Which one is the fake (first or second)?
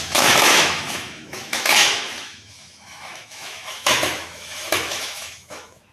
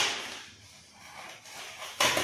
first